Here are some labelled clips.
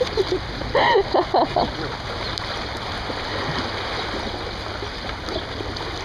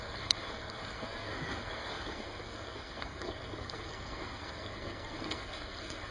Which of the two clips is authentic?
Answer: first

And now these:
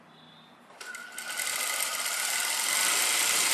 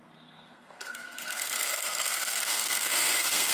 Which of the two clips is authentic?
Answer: first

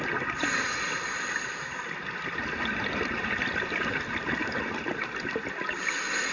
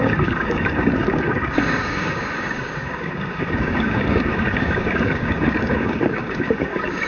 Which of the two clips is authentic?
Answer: first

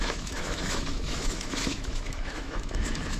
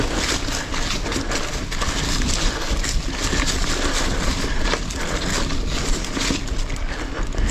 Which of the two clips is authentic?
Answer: second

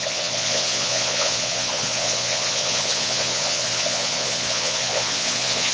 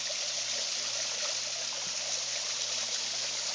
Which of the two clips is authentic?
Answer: second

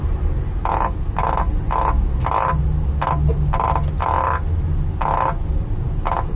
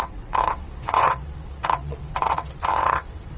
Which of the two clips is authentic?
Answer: first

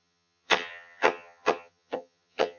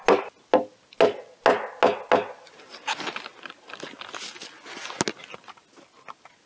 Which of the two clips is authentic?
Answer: second